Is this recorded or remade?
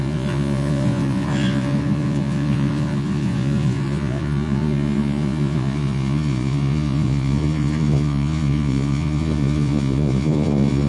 remade